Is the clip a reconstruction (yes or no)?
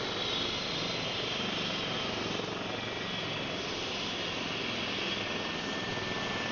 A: no